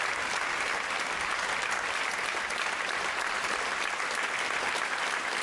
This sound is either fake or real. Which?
real